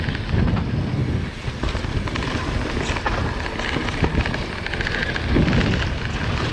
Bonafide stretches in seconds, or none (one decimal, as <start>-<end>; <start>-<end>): 0.0-6.5